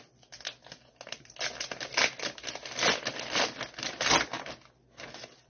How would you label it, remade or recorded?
recorded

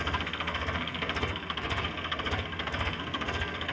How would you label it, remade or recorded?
remade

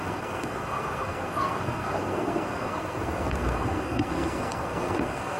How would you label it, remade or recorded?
remade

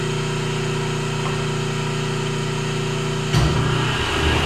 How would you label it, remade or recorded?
recorded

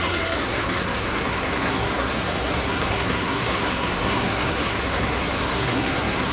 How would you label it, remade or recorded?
remade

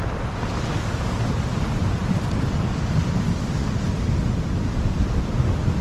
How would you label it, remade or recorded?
recorded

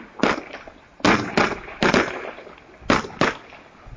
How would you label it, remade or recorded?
recorded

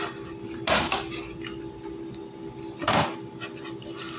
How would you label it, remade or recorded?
recorded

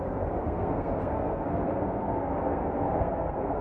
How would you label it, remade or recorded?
remade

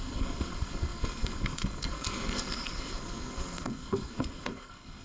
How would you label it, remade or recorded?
remade